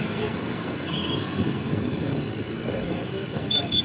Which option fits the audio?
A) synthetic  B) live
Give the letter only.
A